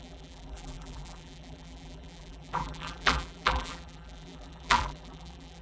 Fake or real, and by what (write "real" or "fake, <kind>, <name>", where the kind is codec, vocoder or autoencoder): fake, vocoder, BigVGAN v2